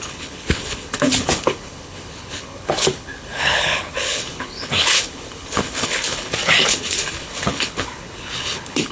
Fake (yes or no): yes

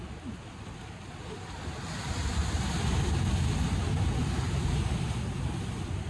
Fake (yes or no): no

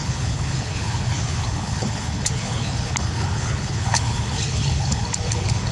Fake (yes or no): yes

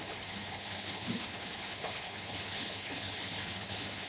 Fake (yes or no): yes